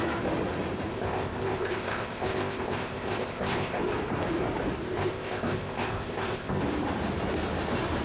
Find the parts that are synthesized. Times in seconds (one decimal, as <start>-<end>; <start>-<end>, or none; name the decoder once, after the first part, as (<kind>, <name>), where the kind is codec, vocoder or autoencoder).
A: 0.9-3.8 (codec, ZipCodec); 4.9-6.6